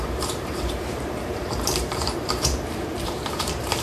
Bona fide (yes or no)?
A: no